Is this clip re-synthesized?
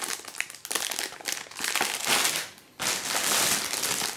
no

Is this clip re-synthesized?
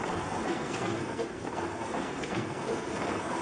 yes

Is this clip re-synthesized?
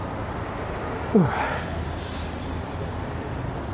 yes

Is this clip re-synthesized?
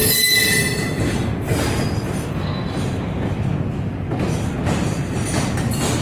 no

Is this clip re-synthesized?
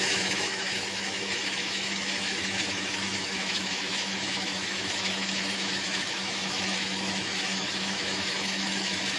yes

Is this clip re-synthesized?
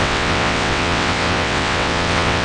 yes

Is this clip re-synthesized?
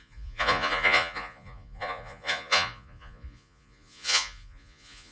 yes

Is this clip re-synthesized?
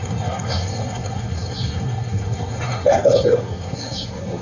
yes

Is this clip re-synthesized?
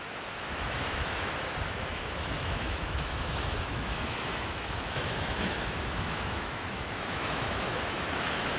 yes